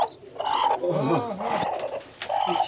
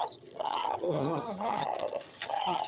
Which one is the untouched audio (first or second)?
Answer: first